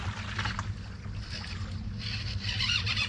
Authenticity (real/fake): real